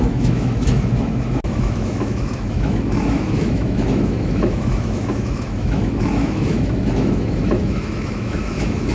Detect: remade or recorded remade